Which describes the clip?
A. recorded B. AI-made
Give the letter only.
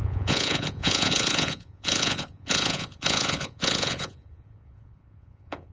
B